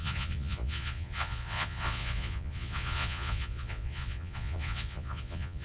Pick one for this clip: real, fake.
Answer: fake